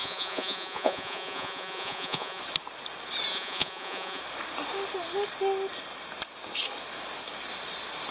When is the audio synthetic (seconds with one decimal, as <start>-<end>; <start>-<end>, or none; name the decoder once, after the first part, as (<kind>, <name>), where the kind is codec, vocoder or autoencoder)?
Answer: 0.0-2.4 (vocoder, Vocos); 3.3-4.2